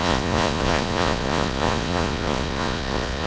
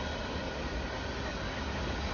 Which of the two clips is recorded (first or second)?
second